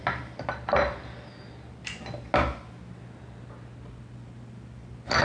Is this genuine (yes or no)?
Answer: yes